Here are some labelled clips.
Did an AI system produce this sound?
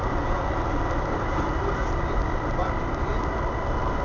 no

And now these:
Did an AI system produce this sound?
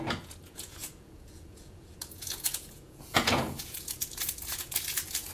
yes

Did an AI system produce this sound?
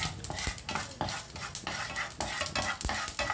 no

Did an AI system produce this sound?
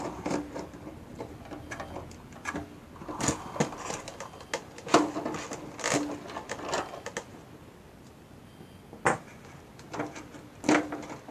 no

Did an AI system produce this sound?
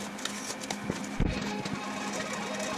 no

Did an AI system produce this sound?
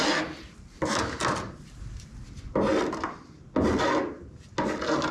no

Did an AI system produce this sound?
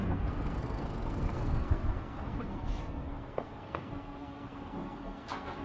yes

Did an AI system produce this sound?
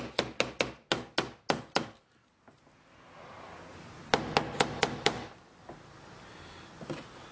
no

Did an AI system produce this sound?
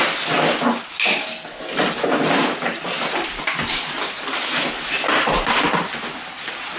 no